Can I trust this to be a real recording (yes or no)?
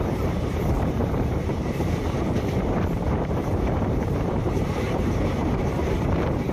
no